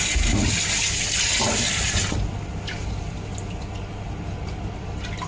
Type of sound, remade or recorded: recorded